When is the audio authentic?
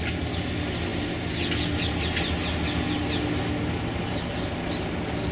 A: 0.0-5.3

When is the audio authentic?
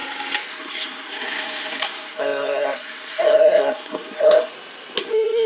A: 0.0-0.5; 4.5-5.0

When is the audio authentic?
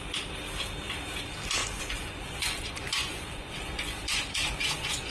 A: 0.0-1.6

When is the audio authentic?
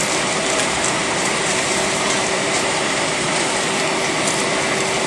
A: 0.0-1.0; 3.5-5.1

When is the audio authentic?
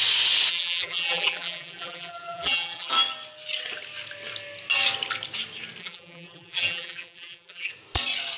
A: 0.0-0.5; 2.9-5.8; 7.7-8.4